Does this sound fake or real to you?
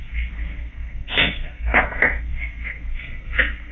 fake